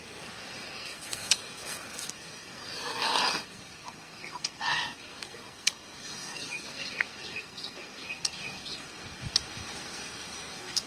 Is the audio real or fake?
fake